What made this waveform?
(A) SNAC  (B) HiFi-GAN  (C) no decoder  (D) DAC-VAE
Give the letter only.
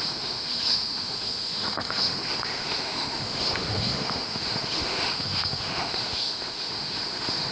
D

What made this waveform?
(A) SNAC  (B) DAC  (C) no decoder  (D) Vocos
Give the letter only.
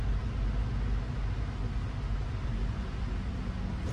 C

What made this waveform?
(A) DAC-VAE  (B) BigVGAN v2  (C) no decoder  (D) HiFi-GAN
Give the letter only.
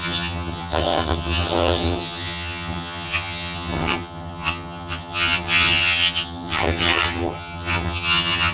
D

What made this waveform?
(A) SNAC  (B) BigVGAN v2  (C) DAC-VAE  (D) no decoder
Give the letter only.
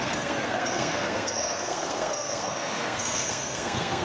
A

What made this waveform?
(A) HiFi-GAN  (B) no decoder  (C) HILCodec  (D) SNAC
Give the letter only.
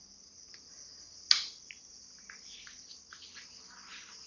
B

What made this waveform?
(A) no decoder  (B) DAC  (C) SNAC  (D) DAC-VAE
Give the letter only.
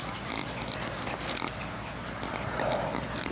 A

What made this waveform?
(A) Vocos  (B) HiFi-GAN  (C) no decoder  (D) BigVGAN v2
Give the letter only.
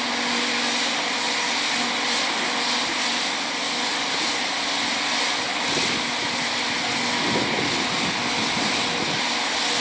C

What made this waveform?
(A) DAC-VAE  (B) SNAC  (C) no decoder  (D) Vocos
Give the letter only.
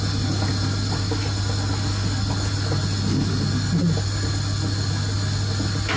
C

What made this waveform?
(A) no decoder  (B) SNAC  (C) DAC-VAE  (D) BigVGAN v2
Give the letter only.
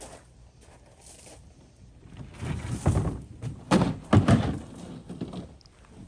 A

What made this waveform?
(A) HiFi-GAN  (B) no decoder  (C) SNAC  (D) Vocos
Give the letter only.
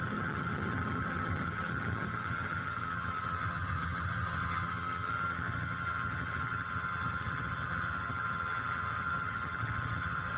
A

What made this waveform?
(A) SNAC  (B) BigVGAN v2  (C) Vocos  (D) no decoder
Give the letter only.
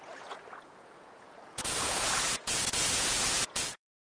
C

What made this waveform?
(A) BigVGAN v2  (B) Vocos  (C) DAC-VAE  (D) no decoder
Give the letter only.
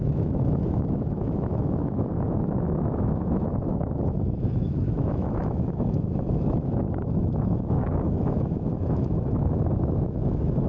C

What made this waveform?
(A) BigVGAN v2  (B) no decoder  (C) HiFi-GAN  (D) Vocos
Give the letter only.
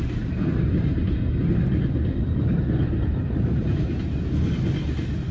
B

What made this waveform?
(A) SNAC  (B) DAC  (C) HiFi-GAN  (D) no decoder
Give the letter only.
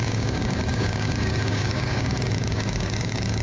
B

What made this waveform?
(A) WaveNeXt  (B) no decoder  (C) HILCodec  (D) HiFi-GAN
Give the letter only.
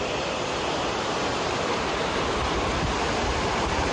B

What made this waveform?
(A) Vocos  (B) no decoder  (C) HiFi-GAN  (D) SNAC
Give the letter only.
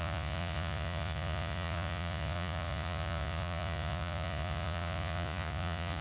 A